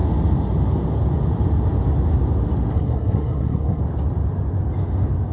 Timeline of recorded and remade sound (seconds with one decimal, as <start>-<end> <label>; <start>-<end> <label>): 0.0-2.7 recorded; 2.7-3.8 remade; 3.8-5.3 recorded